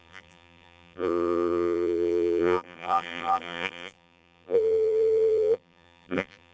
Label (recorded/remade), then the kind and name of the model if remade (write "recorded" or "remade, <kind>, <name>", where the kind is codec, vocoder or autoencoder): remade, vocoder, BigVGAN v2